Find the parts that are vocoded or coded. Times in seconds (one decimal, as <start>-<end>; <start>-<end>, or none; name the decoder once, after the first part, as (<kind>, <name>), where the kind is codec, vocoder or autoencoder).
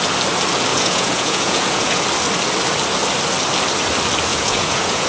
0.7-2.0 (vocoder, Vocos); 4.3-5.1